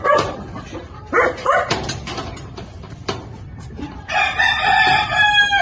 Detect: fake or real fake